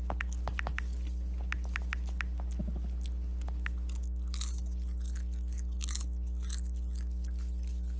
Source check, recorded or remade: recorded